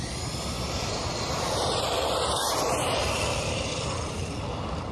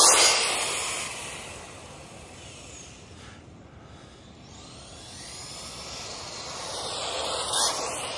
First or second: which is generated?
first